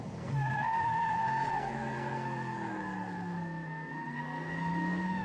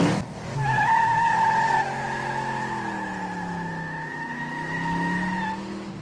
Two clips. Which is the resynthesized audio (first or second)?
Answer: first